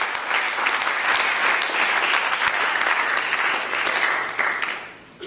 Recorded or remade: recorded